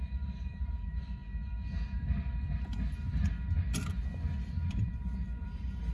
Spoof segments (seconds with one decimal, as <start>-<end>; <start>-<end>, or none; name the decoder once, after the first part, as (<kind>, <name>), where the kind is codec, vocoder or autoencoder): 0.0-1.2 (vocoder, BigVGAN v2); 4.7-5.9